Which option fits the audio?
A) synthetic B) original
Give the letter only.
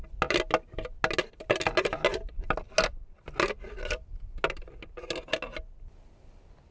B